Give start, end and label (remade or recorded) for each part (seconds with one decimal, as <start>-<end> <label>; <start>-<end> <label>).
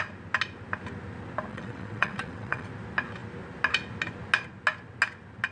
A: 0.0-1.5 recorded; 1.5-2.7 remade; 2.7-5.5 recorded